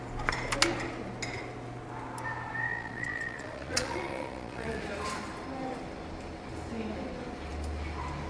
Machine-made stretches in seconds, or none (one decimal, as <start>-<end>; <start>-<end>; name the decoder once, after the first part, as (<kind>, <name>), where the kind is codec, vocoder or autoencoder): 2.7-4.8 (vocoder, Vocos)